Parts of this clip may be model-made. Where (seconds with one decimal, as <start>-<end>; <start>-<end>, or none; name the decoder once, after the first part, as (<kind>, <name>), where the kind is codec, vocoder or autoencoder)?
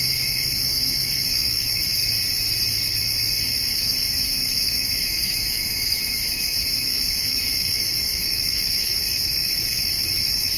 0.0-2.0 (autoencoder, DAC-VAE); 3.7-10.6